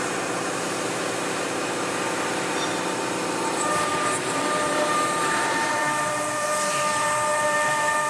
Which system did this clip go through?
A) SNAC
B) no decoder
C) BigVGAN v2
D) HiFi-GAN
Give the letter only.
C